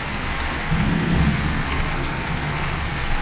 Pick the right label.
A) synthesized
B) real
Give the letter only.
A